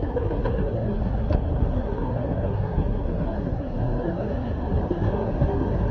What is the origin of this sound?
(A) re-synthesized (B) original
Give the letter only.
A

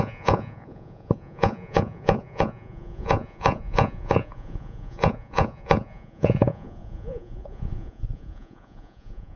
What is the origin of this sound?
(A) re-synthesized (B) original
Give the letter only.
A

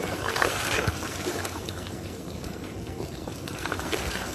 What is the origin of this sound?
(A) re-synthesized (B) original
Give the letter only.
A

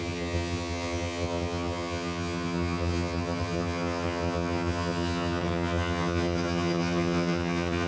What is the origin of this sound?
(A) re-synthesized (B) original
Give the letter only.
A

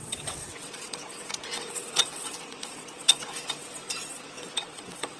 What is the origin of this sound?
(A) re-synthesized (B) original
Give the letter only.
A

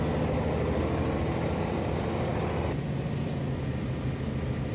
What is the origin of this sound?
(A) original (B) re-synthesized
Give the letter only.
A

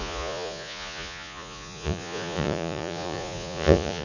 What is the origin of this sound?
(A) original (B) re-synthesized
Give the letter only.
B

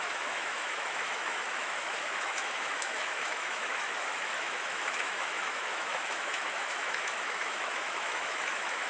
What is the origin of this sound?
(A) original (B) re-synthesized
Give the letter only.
B